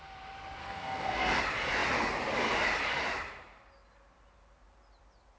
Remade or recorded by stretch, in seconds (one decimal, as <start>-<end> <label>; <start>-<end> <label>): 0.0-0.6 recorded; 0.6-1.4 remade; 1.4-5.4 recorded